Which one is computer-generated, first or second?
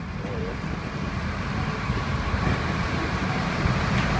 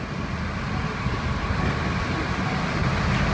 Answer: first